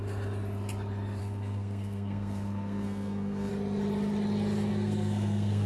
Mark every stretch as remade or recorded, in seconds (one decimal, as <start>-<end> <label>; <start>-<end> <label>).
0.0-1.2 recorded; 1.2-3.5 remade; 3.5-4.7 recorded; 4.7-5.7 remade